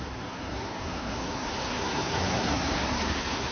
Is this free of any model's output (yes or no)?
no